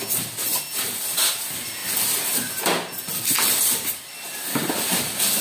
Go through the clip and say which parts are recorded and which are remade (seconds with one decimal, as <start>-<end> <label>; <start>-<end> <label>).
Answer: 0.0-5.4 recorded

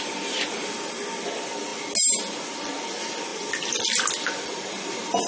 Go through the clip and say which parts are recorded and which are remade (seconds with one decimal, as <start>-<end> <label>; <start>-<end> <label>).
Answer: 0.0-5.3 recorded

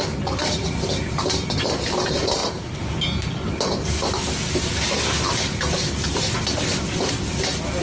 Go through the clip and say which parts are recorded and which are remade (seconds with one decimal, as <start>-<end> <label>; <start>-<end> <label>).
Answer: 0.0-7.8 recorded

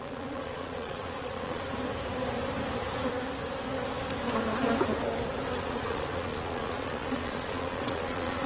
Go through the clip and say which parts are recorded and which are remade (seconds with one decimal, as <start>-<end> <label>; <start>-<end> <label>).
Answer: 0.0-1.6 remade; 1.6-5.6 recorded; 5.6-8.5 remade

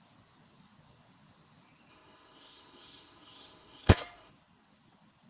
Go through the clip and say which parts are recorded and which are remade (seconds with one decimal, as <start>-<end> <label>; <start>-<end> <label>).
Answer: 0.0-1.9 recorded; 1.9-4.3 remade; 4.3-5.3 recorded

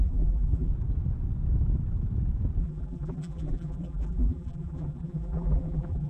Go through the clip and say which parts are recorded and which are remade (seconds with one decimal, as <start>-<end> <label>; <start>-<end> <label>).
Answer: 0.0-0.7 remade; 0.7-2.6 recorded; 2.6-6.1 remade

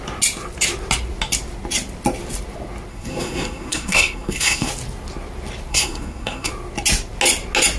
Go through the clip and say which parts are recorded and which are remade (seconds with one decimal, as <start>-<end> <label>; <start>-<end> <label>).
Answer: 0.0-2.9 recorded; 2.9-4.7 remade; 4.7-5.7 recorded; 5.7-6.5 remade; 6.5-7.8 recorded